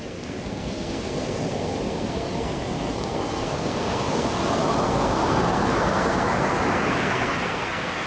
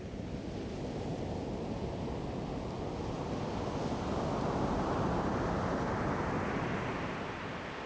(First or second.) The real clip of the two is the second